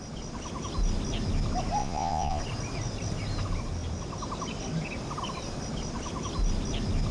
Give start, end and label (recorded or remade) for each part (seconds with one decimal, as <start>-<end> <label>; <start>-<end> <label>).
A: 0.0-1.8 recorded; 1.8-2.4 remade; 2.4-7.1 recorded